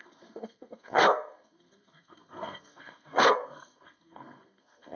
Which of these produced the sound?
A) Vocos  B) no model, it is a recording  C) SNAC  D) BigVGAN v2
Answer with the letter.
C